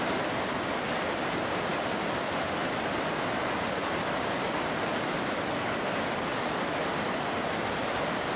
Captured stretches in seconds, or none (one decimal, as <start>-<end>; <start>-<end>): 0.0-1.7; 2.6-8.4

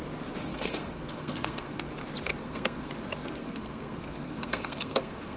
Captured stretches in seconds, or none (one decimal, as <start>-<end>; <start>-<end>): 0.0-0.5; 1.8-2.4; 2.9-3.4

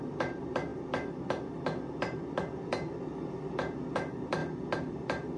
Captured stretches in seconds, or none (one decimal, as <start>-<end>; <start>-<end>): 0.7-3.9; 4.4-5.4

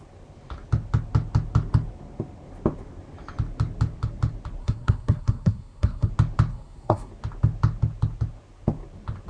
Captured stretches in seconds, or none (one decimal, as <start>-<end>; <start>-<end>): 0.0-4.6; 6.1-6.5; 7.1-9.3

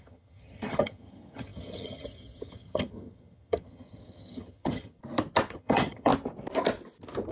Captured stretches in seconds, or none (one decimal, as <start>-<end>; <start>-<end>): 5.0-5.5; 6.1-7.3